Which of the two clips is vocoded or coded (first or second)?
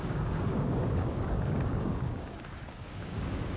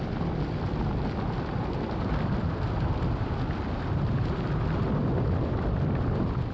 first